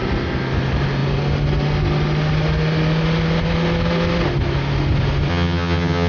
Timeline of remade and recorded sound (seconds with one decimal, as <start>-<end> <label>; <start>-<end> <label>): 0.0-5.3 recorded; 5.3-6.1 remade